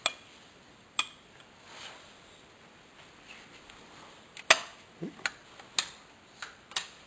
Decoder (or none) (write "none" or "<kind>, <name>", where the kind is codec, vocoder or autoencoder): none